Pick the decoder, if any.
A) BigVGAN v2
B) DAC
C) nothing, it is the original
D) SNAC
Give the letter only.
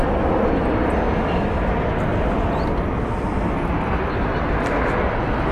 C